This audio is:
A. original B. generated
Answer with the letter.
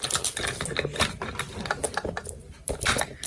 A